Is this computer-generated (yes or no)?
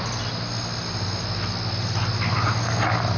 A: no